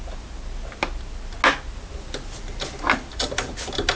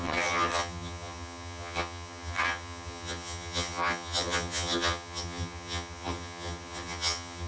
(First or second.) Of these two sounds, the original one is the first